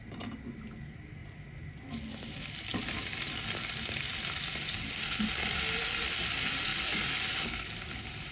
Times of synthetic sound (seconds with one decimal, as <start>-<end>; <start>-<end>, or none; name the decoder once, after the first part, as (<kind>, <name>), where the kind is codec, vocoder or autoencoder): none